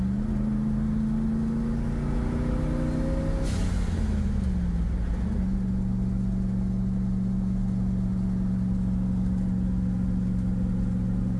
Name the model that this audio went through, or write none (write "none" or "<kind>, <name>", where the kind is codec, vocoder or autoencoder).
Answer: none